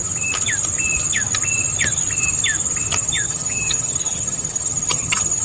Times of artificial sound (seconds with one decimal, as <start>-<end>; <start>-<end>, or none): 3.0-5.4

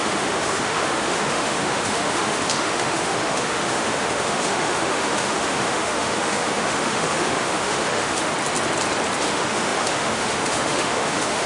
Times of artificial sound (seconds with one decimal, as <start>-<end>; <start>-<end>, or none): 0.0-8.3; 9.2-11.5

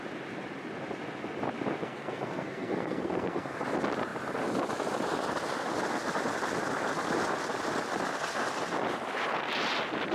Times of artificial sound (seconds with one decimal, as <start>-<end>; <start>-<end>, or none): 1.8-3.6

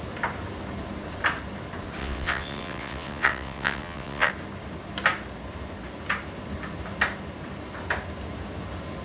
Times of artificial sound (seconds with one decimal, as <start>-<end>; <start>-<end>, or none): 2.0-4.3